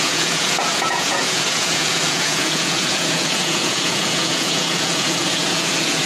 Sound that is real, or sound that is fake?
fake